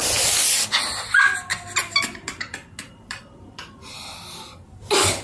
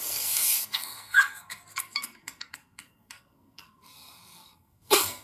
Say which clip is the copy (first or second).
second